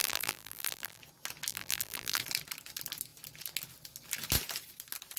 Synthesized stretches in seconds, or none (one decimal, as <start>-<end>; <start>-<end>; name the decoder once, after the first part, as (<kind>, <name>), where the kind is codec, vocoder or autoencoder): 0.0-1.0 (vocoder, BigVGAN v2); 1.5-2.2